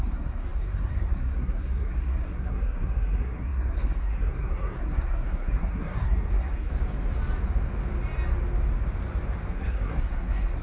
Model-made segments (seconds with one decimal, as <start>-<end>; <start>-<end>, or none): 0.0-6.7; 9.5-10.6